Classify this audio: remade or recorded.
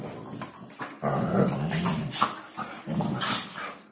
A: recorded